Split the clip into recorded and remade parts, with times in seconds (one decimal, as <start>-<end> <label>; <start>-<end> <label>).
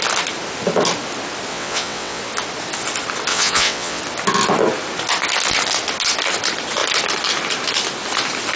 0.0-1.5 recorded; 1.5-2.2 remade; 2.2-3.3 recorded; 3.3-4.0 remade; 4.0-8.6 recorded